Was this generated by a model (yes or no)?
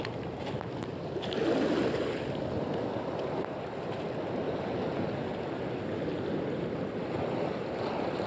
no